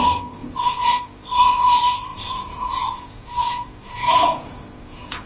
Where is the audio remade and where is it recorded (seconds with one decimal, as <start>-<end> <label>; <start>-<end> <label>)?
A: 0.0-0.4 recorded; 0.4-0.9 remade; 0.9-2.1 recorded; 2.1-5.3 remade